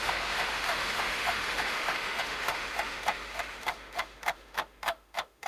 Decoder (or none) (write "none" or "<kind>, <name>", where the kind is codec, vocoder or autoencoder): autoencoder, DAC-VAE